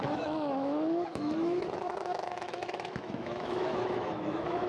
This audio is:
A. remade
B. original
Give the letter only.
A